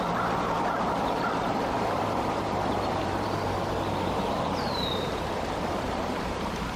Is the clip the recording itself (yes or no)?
no